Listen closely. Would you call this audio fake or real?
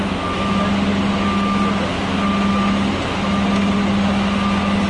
real